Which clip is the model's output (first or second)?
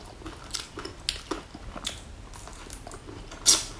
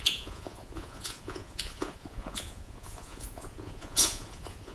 second